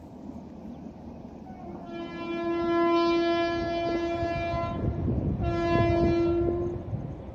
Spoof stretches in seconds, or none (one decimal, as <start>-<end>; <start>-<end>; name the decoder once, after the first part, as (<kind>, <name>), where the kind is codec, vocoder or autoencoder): none